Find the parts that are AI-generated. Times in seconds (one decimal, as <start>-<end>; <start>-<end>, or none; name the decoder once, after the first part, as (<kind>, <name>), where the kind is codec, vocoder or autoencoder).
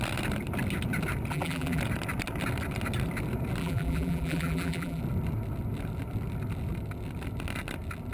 1.3-1.8 (vocoder, BigVGAN v2); 3.6-5.0